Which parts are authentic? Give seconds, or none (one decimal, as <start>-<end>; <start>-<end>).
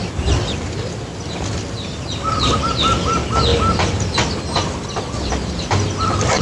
0.0-6.4